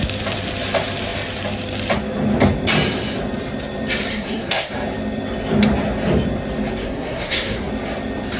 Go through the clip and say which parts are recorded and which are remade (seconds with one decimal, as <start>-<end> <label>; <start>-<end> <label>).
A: 0.0-4.1 recorded; 4.1-4.7 remade; 4.7-6.8 recorded; 6.8-7.7 remade; 7.7-8.4 recorded